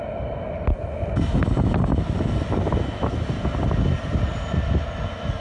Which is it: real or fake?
real